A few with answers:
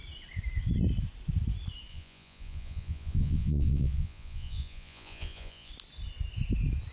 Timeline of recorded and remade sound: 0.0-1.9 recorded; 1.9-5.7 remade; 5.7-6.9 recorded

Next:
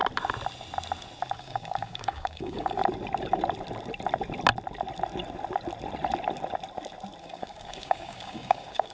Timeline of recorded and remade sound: 0.0-1.4 recorded; 1.4-2.8 remade; 2.8-7.2 recorded; 7.2-8.9 remade

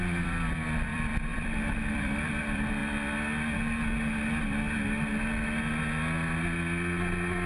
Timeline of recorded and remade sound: 0.0-2.8 remade; 2.8-7.5 recorded

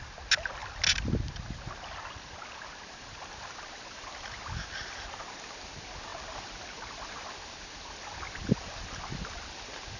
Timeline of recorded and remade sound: 0.0-10.0 recorded

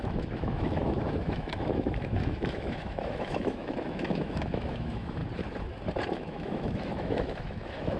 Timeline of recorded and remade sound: 0.0-5.2 remade; 5.2-6.1 recorded; 6.1-8.0 remade

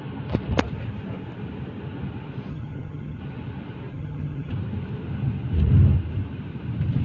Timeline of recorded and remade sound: 0.0-2.5 recorded; 2.5-3.2 remade; 3.2-3.9 recorded; 3.9-4.5 remade; 4.5-7.0 recorded

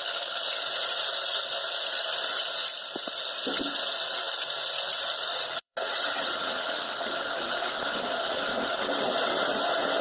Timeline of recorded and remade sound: 0.0-5.3 recorded; 5.3-7.1 remade; 7.1-10.0 recorded

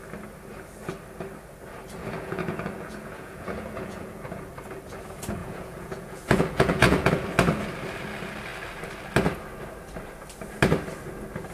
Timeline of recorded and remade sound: 0.0-2.0 recorded; 2.0-4.5 remade; 4.5-5.4 recorded; 5.4-7.1 remade; 7.1-11.5 recorded